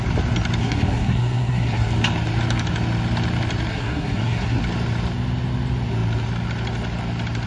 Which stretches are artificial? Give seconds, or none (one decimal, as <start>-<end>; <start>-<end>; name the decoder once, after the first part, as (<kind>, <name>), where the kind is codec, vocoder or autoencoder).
0.6-1.9 (codec, SNAC); 3.7-4.6